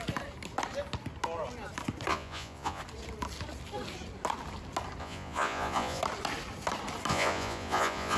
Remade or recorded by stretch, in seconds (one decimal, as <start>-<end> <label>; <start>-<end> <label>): 0.0-2.1 recorded; 2.1-2.8 remade; 2.8-5.0 recorded; 5.0-6.0 remade; 6.0-7.1 recorded; 7.1-8.2 remade